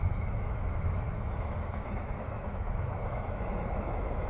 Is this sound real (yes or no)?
no